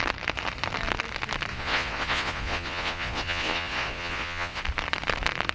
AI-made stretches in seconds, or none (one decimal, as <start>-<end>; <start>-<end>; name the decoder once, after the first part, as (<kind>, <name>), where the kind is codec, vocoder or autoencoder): 1.5-4.6 (vocoder, Vocos)